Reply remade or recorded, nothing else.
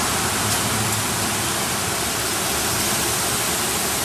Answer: recorded